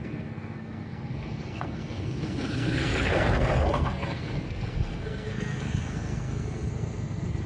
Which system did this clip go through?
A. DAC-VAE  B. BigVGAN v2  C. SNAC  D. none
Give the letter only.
C